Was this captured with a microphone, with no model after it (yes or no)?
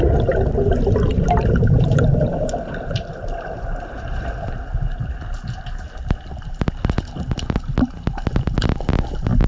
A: yes